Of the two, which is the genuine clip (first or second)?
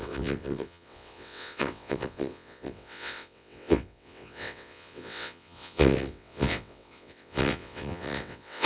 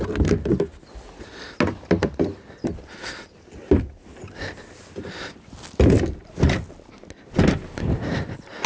second